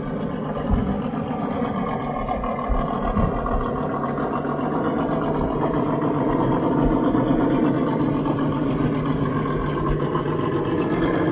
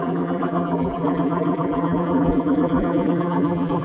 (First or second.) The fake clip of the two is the second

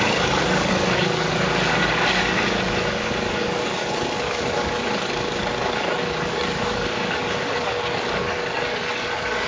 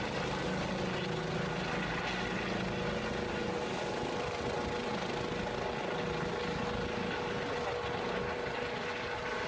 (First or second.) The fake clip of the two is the first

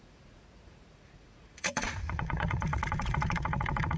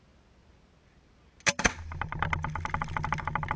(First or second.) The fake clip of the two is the first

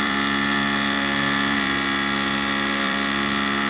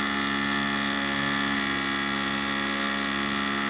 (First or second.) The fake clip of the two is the first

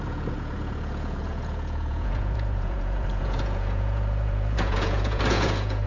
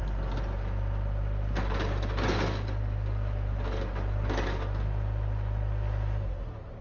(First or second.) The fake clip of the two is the first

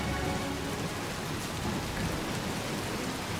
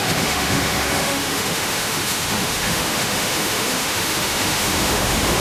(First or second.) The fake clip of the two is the second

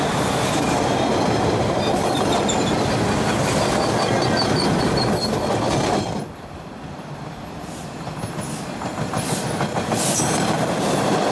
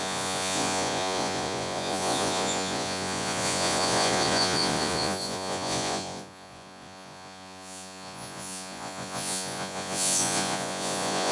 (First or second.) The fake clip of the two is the second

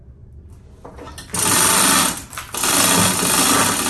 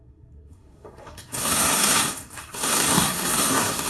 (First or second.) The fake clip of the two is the second